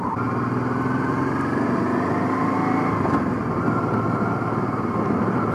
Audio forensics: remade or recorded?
recorded